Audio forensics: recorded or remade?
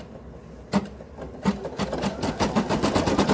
recorded